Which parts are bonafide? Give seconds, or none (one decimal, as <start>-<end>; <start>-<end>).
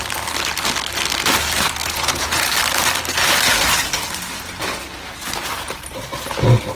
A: 0.0-1.8; 2.5-6.7